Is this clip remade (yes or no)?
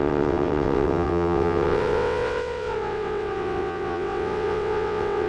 yes